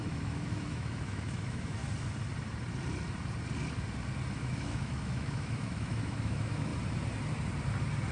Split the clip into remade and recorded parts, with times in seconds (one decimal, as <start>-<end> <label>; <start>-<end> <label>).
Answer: 0.0-1.8 remade; 1.8-4.3 recorded; 4.3-6.7 remade; 6.7-8.1 recorded